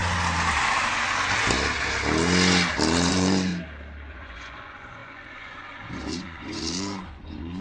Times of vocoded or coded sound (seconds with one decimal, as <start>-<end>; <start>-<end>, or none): 3.1-3.5; 4.1-7.6